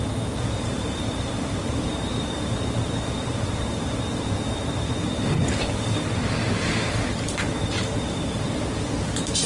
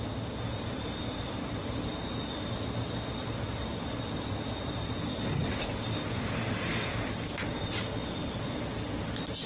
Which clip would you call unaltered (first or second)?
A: second